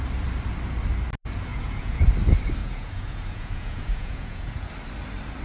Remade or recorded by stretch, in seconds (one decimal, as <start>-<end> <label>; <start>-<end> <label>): 0.0-1.5 recorded; 1.5-2.0 remade; 2.0-2.6 recorded; 2.6-4.7 remade; 4.7-5.4 recorded